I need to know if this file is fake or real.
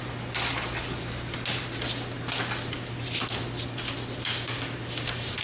real